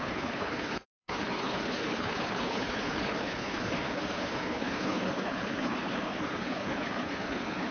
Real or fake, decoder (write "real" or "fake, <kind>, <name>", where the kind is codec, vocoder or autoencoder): fake, codec, HILCodec